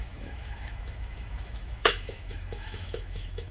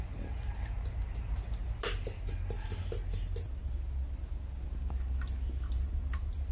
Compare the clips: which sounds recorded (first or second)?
second